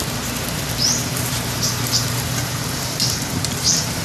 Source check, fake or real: fake